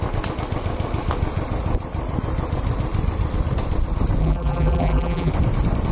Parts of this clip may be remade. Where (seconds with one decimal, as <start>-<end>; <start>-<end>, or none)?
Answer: 4.2-5.3